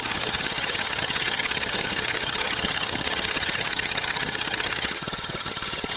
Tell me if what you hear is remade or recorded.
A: remade